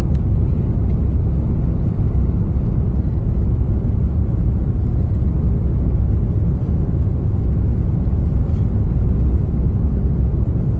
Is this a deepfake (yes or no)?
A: no